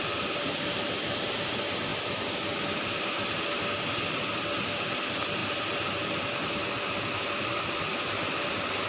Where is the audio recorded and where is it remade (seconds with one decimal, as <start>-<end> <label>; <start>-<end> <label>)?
0.0-8.9 recorded